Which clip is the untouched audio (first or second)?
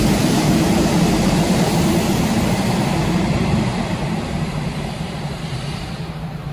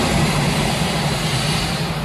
second